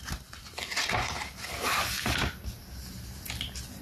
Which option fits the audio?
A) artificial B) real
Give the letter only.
B